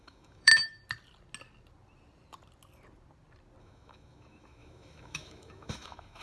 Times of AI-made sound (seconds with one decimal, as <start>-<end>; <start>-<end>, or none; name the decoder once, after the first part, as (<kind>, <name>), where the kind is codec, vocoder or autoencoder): 0.0-0.5 (autoencoder, DAC-VAE); 3.6-6.2